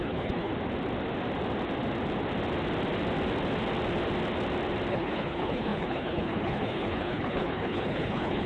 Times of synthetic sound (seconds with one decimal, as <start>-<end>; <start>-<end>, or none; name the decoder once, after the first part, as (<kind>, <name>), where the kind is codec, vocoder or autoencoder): 0.0-0.5 (codec, HILCodec); 4.9-8.5